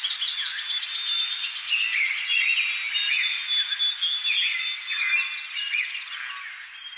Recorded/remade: recorded